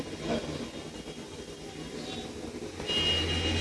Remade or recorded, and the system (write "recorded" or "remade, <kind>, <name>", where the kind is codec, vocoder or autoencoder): recorded